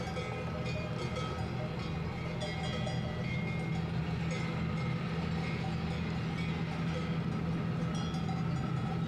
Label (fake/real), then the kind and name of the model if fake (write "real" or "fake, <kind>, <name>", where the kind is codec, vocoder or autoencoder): real